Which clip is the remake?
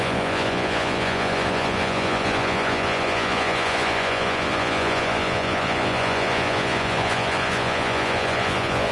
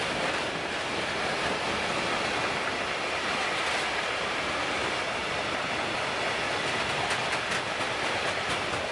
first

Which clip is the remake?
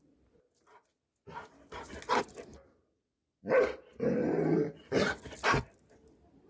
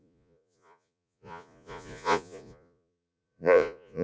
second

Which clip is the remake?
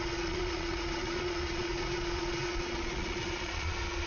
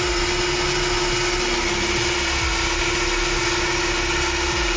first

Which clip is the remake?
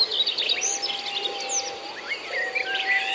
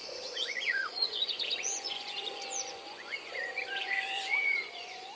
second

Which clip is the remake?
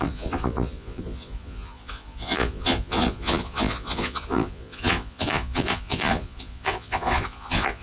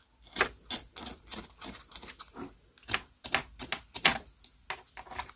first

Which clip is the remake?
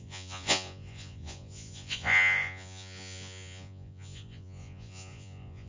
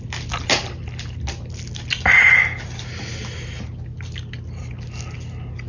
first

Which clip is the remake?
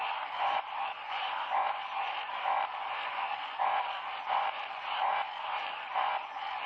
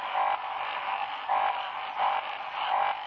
first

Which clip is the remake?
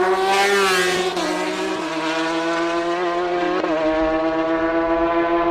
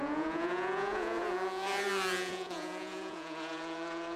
second